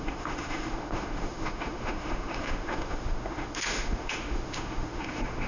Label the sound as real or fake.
fake